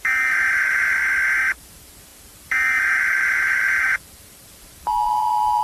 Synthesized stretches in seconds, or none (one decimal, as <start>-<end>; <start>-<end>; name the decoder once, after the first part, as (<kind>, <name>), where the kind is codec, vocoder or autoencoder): 0.0-1.0 (vocoder, BigVGAN v2); 1.6-5.6